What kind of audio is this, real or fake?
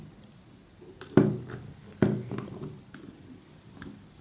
real